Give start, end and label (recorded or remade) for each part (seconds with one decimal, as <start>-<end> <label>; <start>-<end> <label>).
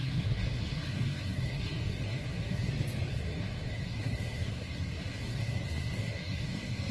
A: 0.0-2.7 remade; 2.7-3.1 recorded; 3.1-6.9 remade